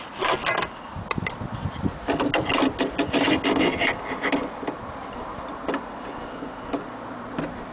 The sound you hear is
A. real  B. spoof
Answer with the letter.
A